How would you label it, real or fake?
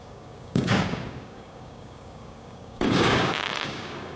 fake